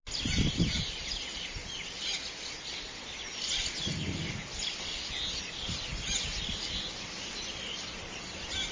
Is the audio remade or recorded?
recorded